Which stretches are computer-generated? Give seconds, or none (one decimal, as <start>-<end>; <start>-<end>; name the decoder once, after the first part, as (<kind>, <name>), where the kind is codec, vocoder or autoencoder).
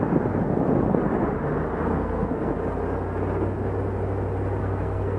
1.9-2.5 (codec, SNAC); 4.6-5.2